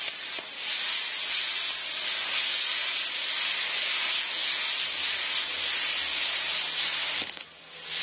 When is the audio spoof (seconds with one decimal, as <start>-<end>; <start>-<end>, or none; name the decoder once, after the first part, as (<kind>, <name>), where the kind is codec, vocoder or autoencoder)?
none